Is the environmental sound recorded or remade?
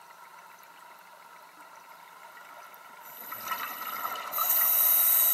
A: recorded